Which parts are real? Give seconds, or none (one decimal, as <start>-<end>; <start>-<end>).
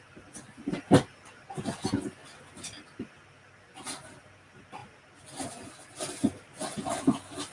0.0-7.5